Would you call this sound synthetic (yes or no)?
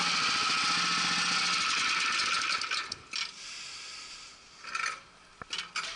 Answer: no